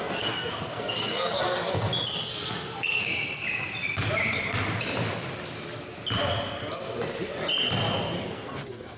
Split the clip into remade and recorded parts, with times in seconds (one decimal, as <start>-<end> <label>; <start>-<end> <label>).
0.0-1.7 remade; 1.7-2.3 recorded; 2.3-3.1 remade; 3.1-8.3 recorded; 8.3-9.0 remade